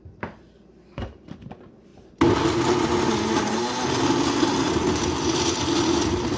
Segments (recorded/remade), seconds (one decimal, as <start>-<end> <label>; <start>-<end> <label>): 0.0-6.4 recorded